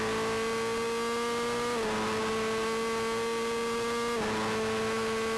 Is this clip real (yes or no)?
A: yes